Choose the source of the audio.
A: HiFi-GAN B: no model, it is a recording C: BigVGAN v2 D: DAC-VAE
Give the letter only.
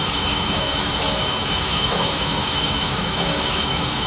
D